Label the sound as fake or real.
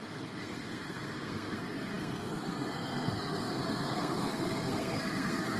fake